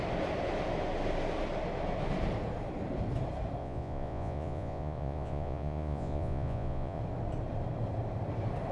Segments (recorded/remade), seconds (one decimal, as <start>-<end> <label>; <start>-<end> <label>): 0.0-3.6 recorded; 3.6-7.0 remade; 7.0-8.7 recorded